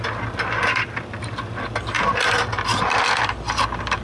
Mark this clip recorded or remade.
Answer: remade